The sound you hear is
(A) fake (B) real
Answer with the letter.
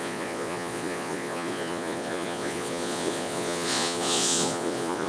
A